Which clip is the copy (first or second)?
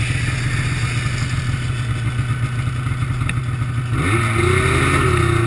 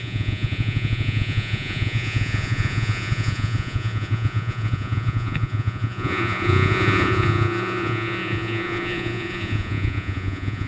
second